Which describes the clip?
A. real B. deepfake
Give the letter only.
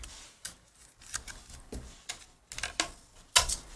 A